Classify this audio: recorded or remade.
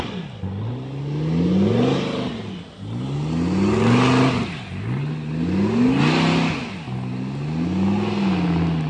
recorded